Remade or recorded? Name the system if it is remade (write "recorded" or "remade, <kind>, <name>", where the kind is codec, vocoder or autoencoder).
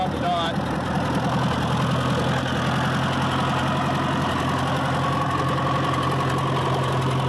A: recorded